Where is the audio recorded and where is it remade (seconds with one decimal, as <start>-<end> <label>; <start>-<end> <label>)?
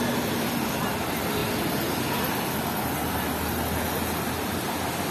0.0-5.1 recorded